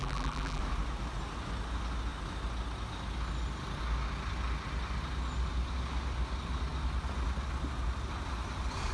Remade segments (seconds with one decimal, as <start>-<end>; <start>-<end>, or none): 0.0-0.6